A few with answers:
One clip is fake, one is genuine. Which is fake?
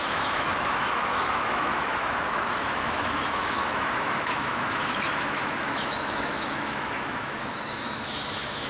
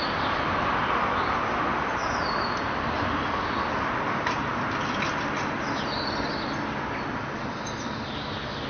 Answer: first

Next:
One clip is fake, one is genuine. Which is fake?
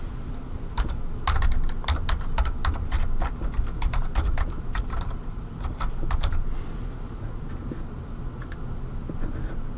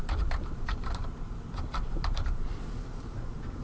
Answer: second